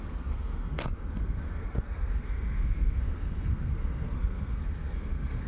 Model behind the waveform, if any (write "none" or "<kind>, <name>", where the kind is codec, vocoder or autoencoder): codec, SNAC